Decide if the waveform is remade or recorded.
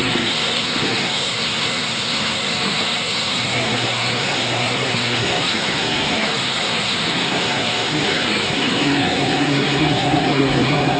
remade